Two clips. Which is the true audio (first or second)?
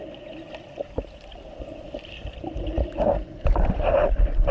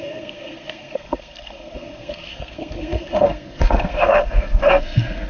first